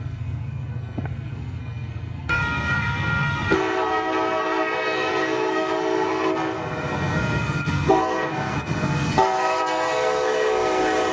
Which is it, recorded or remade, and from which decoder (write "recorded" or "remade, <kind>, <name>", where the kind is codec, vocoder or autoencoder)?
remade, codec, SNAC